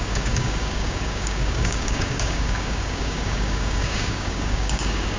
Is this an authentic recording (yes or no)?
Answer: no